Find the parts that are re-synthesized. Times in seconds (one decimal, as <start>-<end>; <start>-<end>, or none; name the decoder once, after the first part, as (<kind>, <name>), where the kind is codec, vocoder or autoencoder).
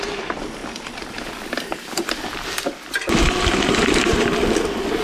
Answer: none